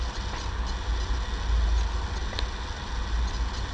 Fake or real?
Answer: real